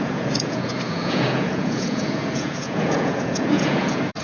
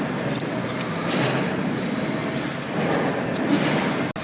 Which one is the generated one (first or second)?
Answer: first